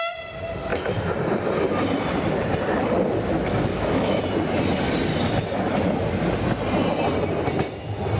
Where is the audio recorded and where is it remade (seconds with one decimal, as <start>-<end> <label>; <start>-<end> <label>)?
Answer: 0.0-3.7 recorded; 3.7-4.2 remade; 4.2-8.2 recorded